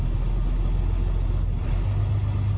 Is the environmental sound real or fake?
real